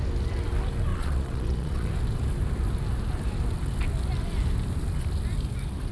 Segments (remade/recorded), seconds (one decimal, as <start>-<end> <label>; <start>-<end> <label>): 0.0-0.9 recorded; 0.9-1.9 remade; 1.9-5.9 recorded